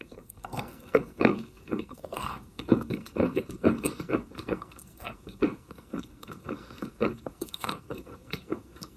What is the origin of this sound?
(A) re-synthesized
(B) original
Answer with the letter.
A